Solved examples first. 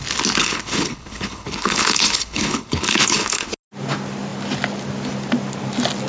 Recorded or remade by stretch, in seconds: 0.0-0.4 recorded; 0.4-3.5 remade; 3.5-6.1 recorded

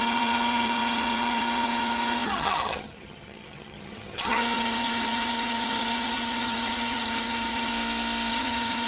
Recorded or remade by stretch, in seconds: 0.0-7.7 remade; 7.7-8.3 recorded; 8.3-8.9 remade

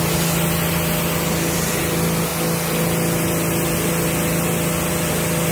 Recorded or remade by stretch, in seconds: 0.0-5.5 recorded

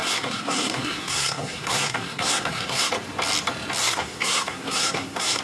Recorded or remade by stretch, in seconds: 0.0-2.9 remade; 2.9-3.8 recorded; 3.8-5.4 remade

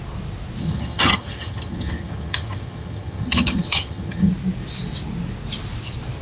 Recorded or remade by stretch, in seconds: 0.0-0.6 recorded; 0.6-4.3 remade; 4.3-6.2 recorded

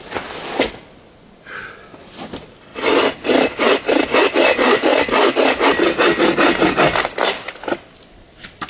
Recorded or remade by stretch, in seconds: 0.0-8.7 recorded